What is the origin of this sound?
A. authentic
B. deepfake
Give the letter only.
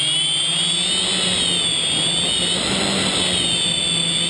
A